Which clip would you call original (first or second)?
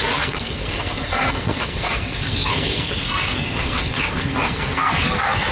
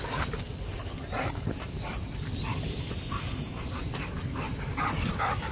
second